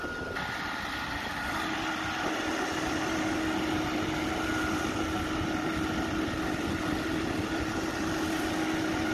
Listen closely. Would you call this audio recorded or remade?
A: recorded